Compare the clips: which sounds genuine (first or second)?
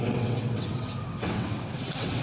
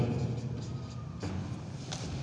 second